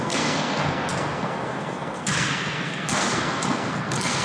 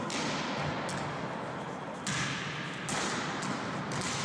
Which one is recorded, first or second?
second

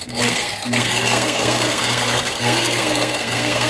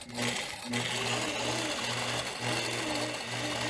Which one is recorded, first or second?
second